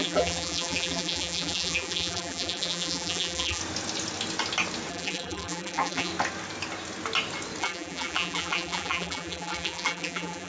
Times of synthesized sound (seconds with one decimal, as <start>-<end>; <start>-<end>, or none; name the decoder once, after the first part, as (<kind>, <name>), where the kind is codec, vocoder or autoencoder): 0.0-3.6 (vocoder, BigVGAN v2); 4.9-6.1; 7.6-10.5